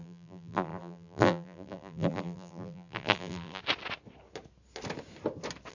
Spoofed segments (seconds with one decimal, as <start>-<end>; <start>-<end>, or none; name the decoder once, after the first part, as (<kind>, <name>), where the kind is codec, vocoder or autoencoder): 0.0-3.6 (vocoder, BigVGAN v2)